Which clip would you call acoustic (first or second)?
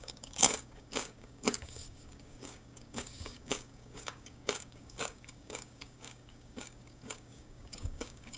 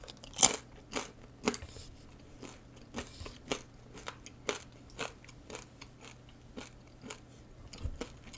second